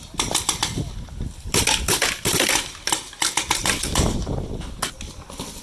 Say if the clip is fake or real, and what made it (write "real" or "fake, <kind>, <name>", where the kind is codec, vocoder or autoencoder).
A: real